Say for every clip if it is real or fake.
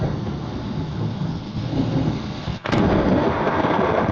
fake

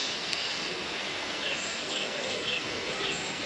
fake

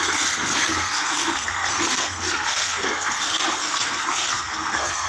fake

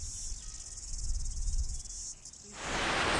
real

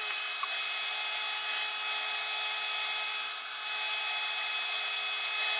real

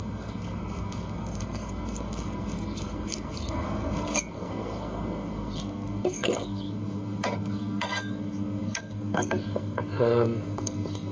fake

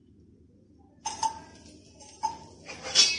real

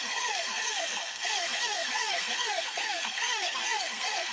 fake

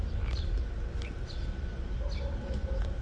real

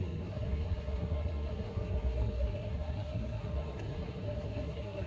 fake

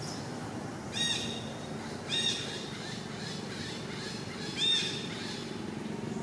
real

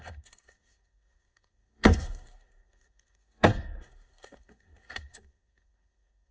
fake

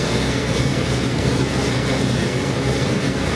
fake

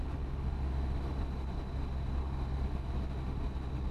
real